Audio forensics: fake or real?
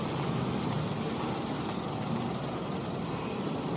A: real